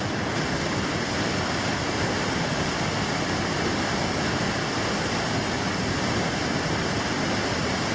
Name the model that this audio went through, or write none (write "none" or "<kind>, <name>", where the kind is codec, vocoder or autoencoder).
none